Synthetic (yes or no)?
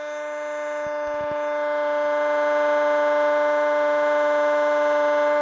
no